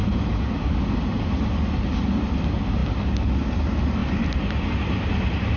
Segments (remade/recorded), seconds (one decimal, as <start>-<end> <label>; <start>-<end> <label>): 0.0-5.6 recorded